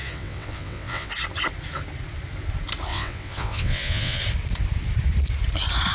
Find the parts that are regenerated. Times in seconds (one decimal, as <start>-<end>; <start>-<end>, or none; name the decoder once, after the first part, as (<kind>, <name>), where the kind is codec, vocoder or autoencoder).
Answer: 0.0-1.1 (vocoder, WaveNeXt); 2.9-4.2